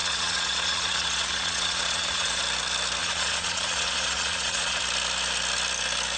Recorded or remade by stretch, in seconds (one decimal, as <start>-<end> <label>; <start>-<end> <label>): 0.0-2.4 remade; 2.4-3.0 recorded; 3.0-4.8 remade; 4.8-6.2 recorded